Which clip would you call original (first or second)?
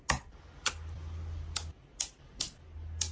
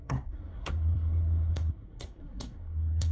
first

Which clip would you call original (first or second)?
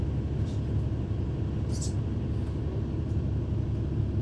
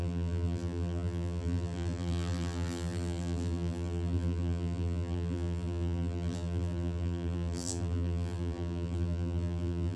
first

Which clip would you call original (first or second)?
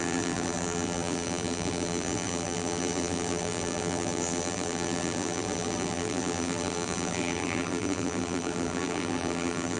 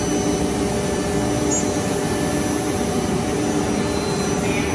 second